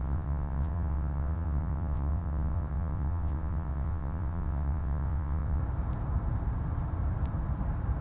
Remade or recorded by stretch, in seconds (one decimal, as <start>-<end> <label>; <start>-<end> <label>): 0.0-5.6 remade; 5.6-8.0 recorded